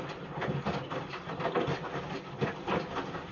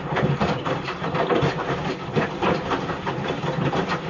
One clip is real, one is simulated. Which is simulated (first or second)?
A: second